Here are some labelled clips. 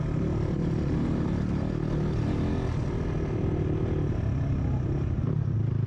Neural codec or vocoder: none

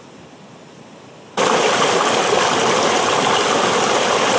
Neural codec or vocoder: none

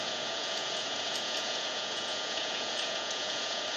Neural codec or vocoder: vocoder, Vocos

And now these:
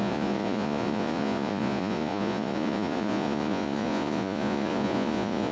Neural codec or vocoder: vocoder, Vocos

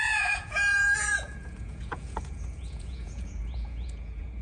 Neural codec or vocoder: vocoder, Vocos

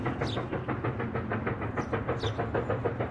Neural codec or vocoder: none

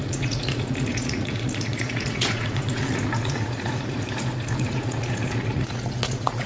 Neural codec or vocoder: vocoder, Vocos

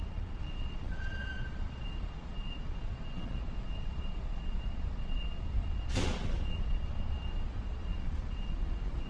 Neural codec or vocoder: vocoder, Vocos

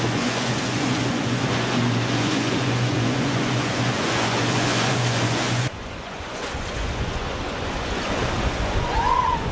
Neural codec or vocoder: vocoder, Vocos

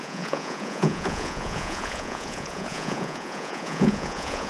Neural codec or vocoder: vocoder, Vocos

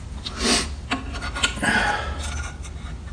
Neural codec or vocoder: none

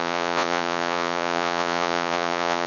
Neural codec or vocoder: vocoder, Vocos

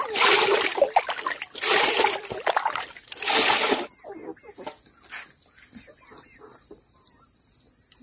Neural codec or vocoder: none